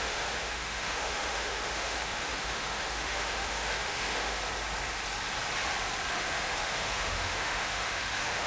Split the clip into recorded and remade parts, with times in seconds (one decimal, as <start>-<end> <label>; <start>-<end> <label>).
0.0-4.4 remade; 4.4-6.1 recorded; 6.1-8.5 remade